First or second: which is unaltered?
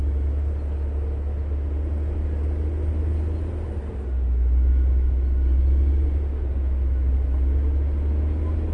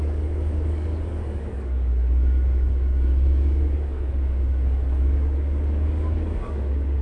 first